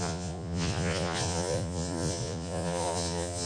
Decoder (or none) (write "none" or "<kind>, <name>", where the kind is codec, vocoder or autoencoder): vocoder, Vocos